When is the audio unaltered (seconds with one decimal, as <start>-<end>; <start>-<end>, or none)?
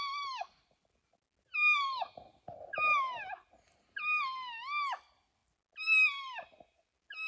0.0-7.3